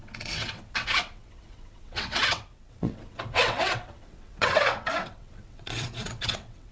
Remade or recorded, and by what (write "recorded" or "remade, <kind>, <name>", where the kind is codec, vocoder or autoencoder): remade, vocoder, WaveNeXt